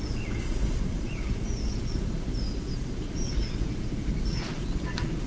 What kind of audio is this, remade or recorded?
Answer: remade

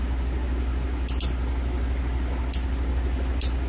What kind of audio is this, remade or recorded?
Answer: recorded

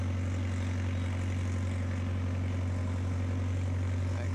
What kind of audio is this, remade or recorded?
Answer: recorded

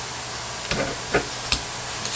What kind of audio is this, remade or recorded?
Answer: recorded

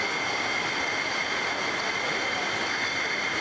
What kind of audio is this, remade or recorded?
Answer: recorded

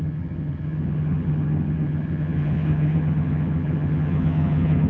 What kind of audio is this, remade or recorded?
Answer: remade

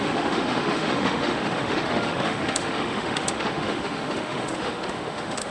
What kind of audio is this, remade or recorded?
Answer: remade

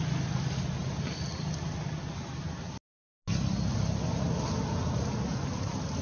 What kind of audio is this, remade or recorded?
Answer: recorded